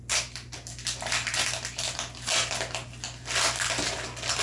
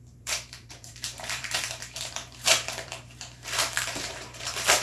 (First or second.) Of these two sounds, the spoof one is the second